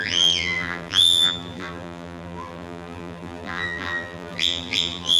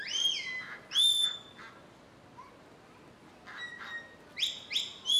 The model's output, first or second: first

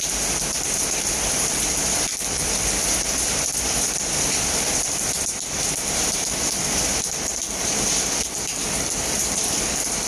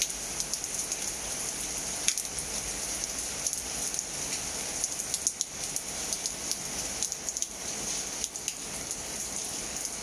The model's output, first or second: first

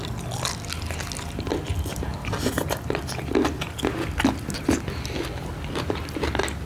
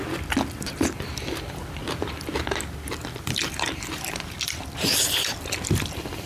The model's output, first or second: second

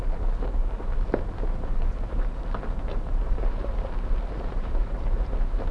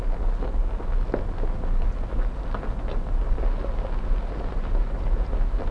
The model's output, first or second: first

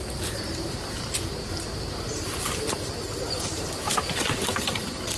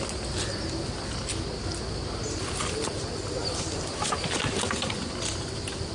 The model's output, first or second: first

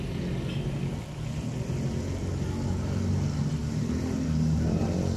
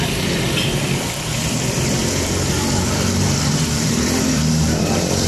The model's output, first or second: second